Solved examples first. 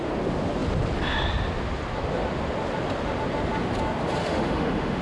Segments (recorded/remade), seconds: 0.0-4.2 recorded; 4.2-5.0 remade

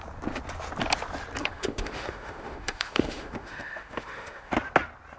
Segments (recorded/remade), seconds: 0.0-1.4 recorded; 1.4-4.5 remade; 4.5-5.2 recorded

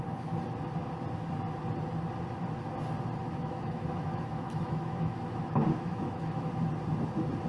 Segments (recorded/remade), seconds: 0.0-3.2 recorded; 3.2-6.6 remade; 6.6-7.5 recorded